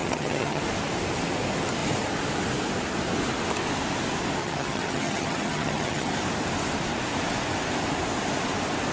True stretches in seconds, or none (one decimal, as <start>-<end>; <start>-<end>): 0.6-4.4; 6.1-8.9

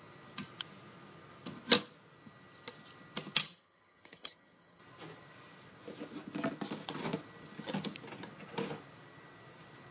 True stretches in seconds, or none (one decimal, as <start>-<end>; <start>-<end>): 0.0-3.4; 4.8-9.9